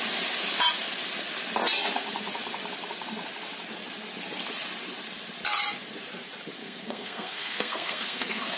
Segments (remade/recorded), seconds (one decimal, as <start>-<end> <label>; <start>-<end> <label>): 0.0-6.6 recorded; 6.6-8.6 remade